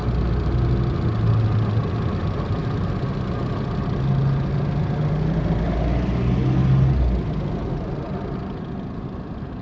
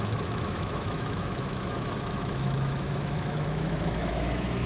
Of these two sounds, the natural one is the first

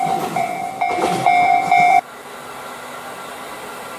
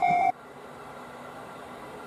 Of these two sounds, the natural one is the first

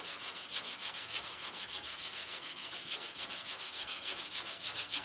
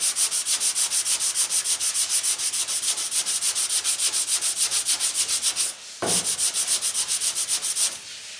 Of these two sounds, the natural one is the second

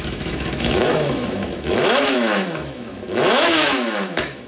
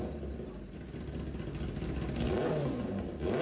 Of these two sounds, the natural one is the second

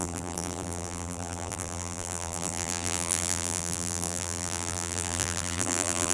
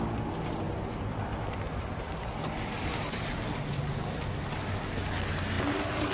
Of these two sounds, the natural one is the second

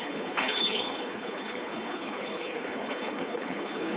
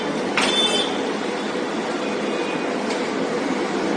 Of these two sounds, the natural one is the second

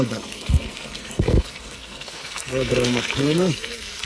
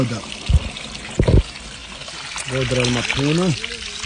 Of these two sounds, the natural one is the second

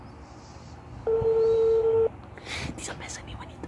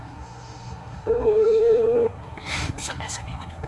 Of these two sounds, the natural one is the first